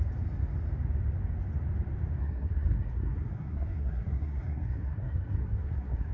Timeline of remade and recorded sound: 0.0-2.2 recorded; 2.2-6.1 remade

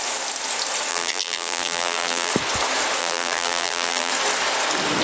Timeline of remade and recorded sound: 0.0-0.9 recorded; 0.9-2.3 remade; 2.3-3.0 recorded; 3.0-4.1 remade; 4.1-5.0 recorded

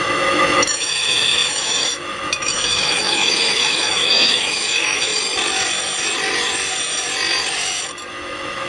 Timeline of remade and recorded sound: 0.0-5.1 remade; 5.1-8.1 recorded; 8.1-8.7 remade

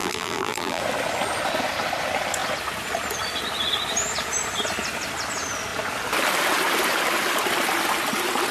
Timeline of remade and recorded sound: 0.0-0.8 remade; 0.8-8.5 recorded

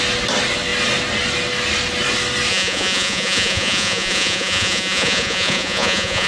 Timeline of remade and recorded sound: 0.0-2.5 recorded; 2.5-6.3 remade

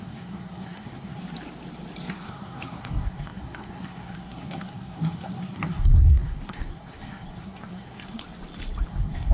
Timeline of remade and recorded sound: 0.0-1.2 remade; 1.2-2.1 recorded; 2.1-8.2 remade; 8.2-8.9 recorded; 8.9-9.3 remade